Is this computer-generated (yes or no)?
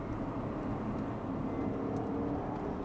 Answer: no